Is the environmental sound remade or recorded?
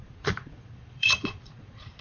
remade